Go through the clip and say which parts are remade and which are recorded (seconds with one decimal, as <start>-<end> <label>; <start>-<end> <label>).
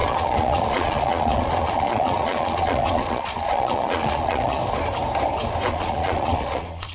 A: 0.0-4.6 remade; 4.6-5.7 recorded; 5.7-6.9 remade